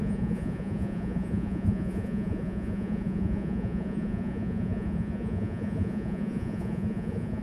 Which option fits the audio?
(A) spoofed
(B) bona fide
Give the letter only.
A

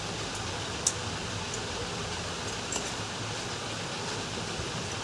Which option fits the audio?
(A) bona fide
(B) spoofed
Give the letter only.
A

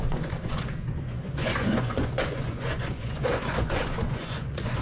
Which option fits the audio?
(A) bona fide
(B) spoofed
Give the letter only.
B